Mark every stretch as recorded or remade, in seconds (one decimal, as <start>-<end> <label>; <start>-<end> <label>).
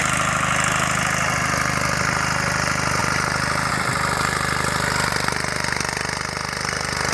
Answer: 0.0-7.1 recorded